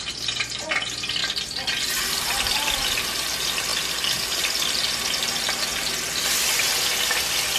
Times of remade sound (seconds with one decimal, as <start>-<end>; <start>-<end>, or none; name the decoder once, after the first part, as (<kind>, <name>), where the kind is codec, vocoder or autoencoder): none